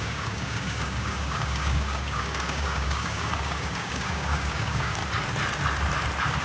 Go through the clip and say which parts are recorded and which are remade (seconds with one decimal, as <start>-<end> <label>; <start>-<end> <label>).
0.0-5.0 remade; 5.0-6.4 recorded